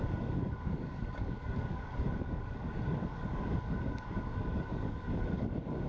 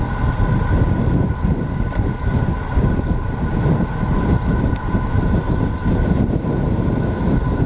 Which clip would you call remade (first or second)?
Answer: first